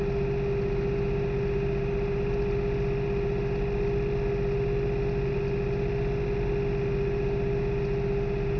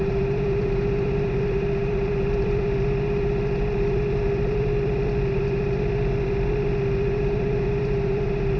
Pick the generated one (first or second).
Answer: second